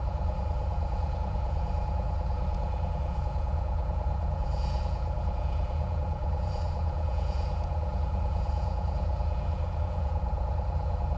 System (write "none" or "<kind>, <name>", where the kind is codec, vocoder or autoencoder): vocoder, Vocos